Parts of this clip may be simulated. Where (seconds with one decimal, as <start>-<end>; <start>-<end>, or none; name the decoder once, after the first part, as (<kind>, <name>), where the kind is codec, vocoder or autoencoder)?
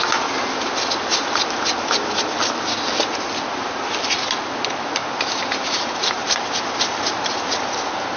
5.0-6.6 (vocoder, BigVGAN v2)